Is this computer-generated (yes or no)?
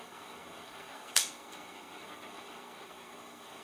yes